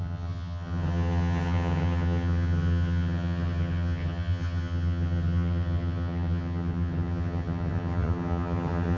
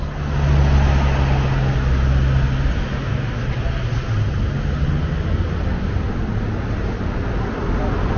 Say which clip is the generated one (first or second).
first